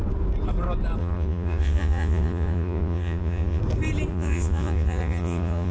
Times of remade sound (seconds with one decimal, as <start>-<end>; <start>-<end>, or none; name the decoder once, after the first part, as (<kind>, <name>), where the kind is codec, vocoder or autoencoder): 1.0-3.6 (vocoder, Vocos); 4.1-5.7